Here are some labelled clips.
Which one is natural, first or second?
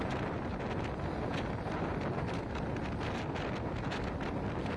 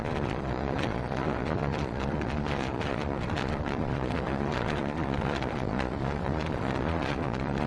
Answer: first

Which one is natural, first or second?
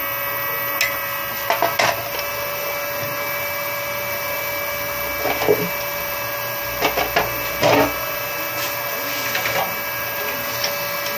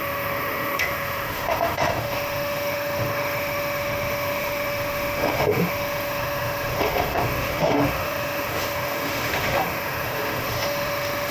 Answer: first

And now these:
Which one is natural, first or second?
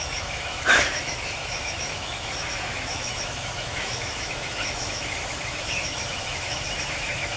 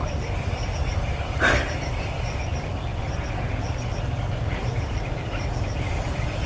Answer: second